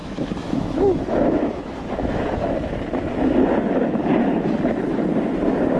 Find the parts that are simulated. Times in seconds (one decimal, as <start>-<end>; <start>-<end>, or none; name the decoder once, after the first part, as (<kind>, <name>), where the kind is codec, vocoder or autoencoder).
0.0-2.7 (autoencoder, DAC-VAE)